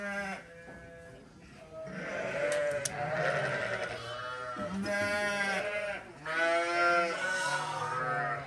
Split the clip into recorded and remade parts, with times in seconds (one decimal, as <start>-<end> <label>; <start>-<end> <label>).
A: 0.0-7.2 recorded; 7.2-8.0 remade; 8.0-8.5 recorded